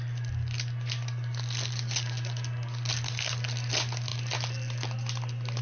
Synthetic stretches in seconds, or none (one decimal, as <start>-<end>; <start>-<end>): none